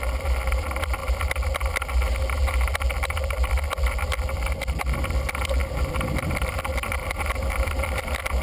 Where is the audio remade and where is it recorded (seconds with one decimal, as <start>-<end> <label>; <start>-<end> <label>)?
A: 0.0-5.6 recorded; 5.6-8.0 remade; 8.0-8.4 recorded